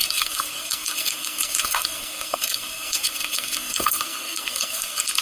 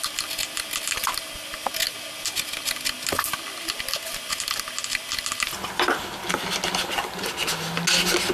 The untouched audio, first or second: second